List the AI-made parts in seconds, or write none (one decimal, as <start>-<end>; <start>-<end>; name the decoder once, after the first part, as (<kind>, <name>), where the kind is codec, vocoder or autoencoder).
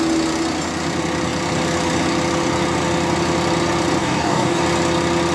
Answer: 4.0-4.6 (codec, DAC)